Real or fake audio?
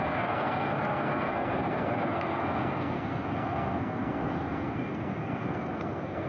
fake